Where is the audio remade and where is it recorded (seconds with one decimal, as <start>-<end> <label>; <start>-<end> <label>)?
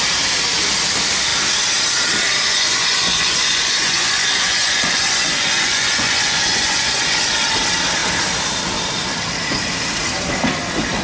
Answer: 0.0-2.5 recorded; 2.5-7.4 remade; 7.4-11.0 recorded